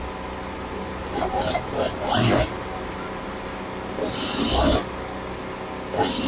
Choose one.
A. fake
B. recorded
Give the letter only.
B